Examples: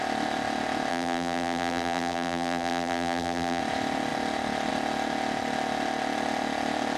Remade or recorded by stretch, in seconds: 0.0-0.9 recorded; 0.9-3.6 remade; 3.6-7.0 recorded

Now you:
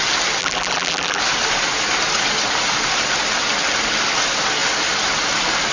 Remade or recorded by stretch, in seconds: 0.0-0.4 recorded; 0.4-1.2 remade; 1.2-5.7 recorded